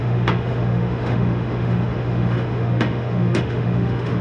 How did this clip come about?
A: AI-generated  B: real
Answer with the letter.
A